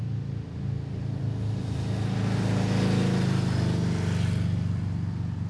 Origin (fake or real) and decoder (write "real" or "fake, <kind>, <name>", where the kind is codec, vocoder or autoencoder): real